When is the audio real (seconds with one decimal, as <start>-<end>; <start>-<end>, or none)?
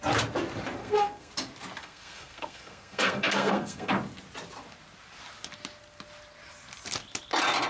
0.0-0.8; 1.3-1.8; 3.9-7.7